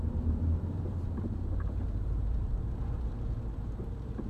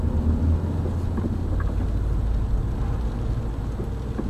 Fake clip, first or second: first